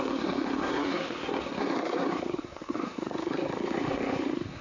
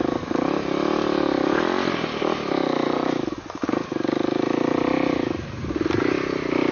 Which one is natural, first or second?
second